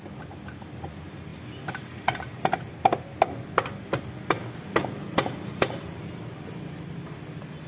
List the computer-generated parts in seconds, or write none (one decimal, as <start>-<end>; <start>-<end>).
none